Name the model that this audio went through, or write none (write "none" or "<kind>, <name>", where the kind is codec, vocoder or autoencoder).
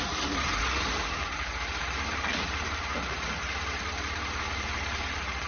vocoder, BigVGAN v2